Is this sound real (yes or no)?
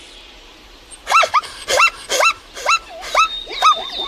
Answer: yes